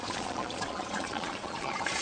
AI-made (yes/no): yes